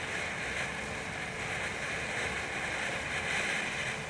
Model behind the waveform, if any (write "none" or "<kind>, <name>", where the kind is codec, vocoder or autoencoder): none